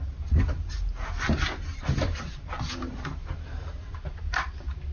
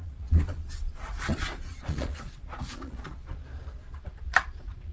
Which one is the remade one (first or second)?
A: second